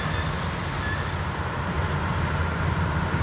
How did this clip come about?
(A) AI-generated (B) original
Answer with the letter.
B